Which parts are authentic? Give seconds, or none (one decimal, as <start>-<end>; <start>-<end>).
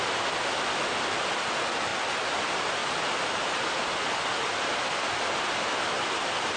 0.0-6.6